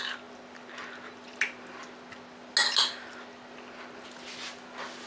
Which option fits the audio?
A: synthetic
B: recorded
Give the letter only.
B